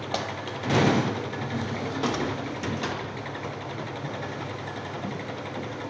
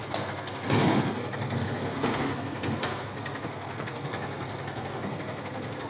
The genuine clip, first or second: first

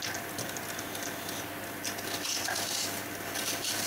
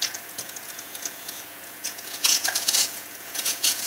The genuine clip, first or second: first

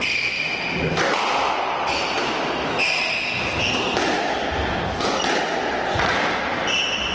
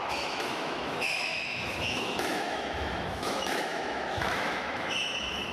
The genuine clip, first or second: first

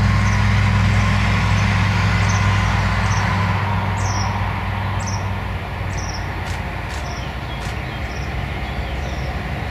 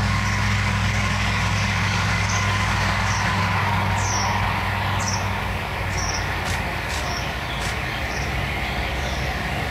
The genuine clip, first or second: first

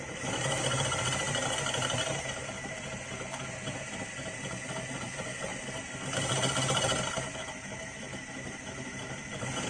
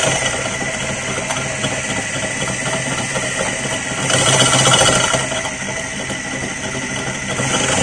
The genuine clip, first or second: second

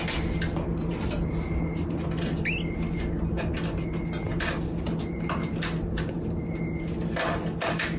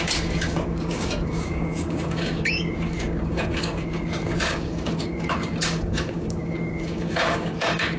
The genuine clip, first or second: first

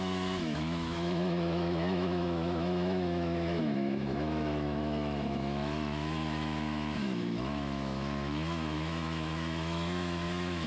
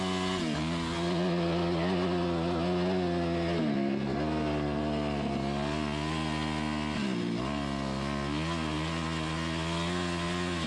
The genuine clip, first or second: second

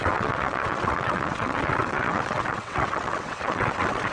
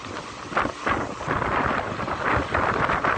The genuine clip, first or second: second